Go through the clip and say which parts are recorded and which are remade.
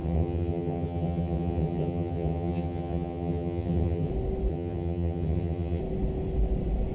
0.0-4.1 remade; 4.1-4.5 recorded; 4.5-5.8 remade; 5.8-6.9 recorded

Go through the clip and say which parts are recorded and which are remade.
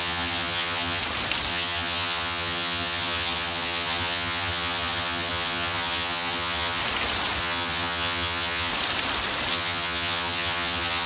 0.0-1.0 remade; 1.0-1.5 recorded; 1.5-6.8 remade; 6.8-7.4 recorded; 7.4-8.7 remade; 8.7-9.5 recorded; 9.5-11.1 remade